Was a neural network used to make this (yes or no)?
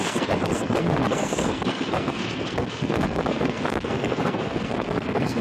yes